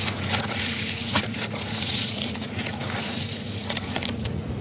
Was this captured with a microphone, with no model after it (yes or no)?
no